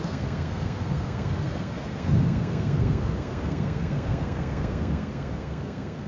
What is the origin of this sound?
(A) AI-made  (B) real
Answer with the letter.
A